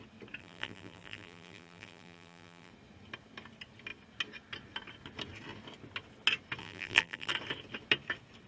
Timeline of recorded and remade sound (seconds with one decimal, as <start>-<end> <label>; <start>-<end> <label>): 0.0-0.4 recorded; 0.4-2.7 remade; 2.7-6.6 recorded; 6.6-7.3 remade; 7.3-8.5 recorded